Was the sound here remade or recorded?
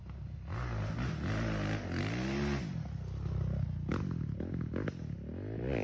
recorded